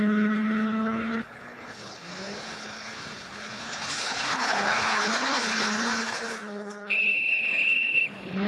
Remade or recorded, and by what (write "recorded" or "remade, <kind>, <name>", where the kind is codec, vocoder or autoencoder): remade, codec, HILCodec